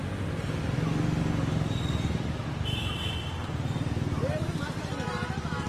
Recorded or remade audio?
recorded